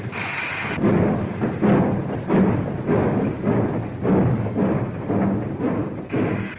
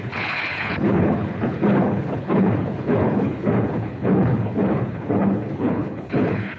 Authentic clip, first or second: first